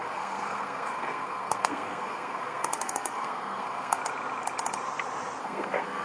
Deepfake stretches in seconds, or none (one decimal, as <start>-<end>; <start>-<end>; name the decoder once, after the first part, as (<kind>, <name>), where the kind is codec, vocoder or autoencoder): 0.0-4.0 (codec, SNAC); 5.4-6.0